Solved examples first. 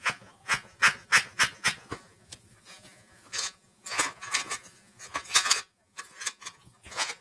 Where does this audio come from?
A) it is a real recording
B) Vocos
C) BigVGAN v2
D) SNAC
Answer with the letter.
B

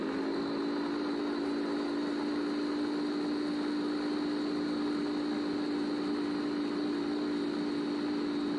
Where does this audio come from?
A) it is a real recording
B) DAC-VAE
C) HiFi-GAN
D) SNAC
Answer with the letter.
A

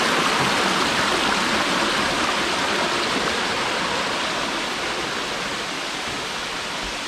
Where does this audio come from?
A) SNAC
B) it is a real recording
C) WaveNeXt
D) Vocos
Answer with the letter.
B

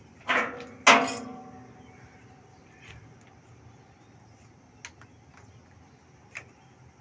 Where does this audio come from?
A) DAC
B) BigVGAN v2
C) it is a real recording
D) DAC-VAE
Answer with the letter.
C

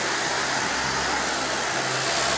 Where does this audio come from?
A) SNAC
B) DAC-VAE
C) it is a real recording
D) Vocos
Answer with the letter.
C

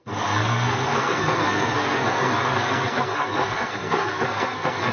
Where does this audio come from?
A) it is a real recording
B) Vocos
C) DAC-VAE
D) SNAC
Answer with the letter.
D